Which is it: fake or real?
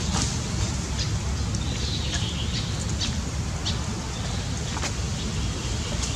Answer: real